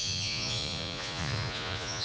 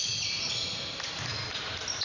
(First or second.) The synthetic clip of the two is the first